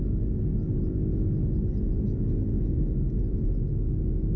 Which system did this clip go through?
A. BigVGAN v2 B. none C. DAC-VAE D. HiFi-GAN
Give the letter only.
B